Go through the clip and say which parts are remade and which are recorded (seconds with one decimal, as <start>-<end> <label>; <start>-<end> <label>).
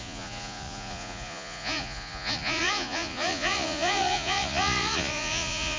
0.0-5.8 remade